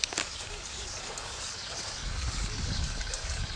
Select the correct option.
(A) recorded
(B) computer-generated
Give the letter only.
B